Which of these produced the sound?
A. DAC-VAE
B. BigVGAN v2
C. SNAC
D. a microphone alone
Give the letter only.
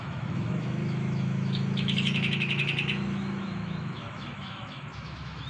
A